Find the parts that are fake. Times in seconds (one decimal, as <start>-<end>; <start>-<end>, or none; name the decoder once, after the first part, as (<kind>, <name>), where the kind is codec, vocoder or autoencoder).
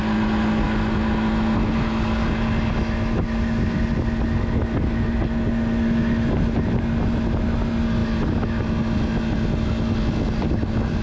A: none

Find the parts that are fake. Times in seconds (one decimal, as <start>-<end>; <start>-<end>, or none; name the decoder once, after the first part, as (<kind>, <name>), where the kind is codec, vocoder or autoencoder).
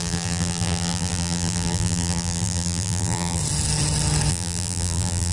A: 0.0-3.4 (vocoder, BigVGAN v2); 4.3-5.3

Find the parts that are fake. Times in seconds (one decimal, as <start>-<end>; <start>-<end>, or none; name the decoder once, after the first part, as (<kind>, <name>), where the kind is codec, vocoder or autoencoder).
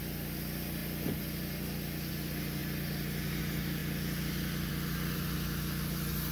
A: none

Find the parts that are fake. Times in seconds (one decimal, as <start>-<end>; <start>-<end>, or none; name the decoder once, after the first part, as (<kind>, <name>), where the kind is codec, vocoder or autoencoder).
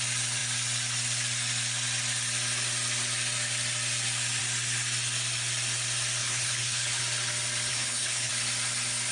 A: 6.2-7.0 (codec, HILCodec); 7.7-8.3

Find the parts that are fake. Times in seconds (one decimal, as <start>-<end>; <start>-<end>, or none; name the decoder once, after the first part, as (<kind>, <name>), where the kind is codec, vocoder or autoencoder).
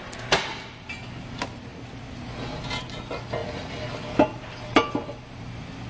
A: none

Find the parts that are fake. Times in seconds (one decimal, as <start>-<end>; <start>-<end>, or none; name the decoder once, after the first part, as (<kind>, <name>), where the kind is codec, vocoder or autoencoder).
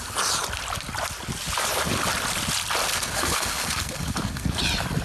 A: 2.9-4.6 (codec, SNAC)